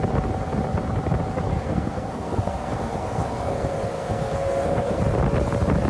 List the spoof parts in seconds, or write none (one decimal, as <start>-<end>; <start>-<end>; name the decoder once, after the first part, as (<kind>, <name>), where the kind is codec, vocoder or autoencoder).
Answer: 1.5-5.0 (codec, SNAC)